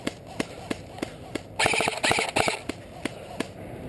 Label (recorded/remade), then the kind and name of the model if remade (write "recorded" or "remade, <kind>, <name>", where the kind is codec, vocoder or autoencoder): recorded